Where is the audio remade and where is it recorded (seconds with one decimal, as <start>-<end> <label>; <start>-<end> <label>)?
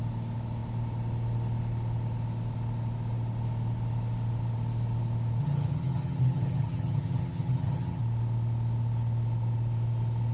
0.0-5.4 recorded; 5.4-8.0 remade; 8.0-10.3 recorded